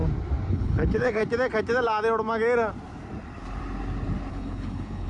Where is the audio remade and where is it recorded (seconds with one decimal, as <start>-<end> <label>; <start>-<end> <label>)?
0.0-0.5 recorded; 0.5-1.2 remade; 1.2-4.3 recorded; 4.3-5.1 remade